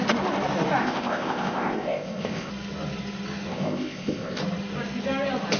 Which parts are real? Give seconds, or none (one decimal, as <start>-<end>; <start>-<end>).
0.0-0.8; 2.5-3.5; 4.4-5.6